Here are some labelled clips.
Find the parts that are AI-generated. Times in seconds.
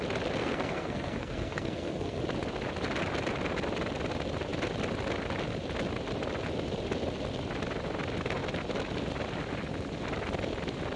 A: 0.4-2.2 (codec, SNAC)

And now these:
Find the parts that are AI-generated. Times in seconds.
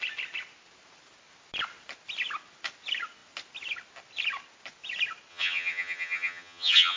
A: 5.3-7.0 (vocoder, HiFi-GAN)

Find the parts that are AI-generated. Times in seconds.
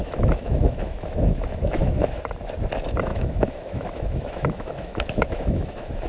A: 0.0-2.2 (autoencoder, DAC-VAE); 3.1-6.1